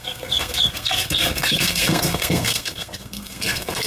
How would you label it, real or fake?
fake